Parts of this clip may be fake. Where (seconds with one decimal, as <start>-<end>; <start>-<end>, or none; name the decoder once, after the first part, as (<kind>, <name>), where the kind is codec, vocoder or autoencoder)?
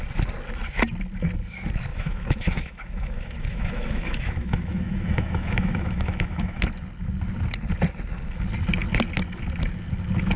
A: 1.9-6.6 (autoencoder, DAC-VAE)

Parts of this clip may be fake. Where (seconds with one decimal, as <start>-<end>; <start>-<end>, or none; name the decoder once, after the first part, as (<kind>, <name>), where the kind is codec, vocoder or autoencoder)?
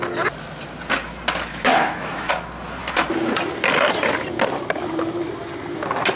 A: 1.5-2.3 (autoencoder, DAC-VAE)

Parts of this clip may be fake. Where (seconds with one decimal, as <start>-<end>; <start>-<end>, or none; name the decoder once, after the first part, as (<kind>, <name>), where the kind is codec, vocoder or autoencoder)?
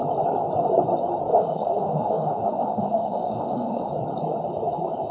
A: 1.3-3.9 (autoencoder, DAC-VAE)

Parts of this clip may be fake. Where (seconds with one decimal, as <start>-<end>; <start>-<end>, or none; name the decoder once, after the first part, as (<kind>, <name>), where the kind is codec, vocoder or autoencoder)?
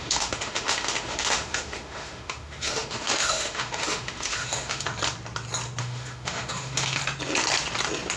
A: 0.0-4.9 (autoencoder, DAC-VAE); 5.8-7.0